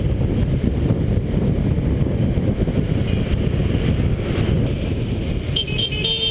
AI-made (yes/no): no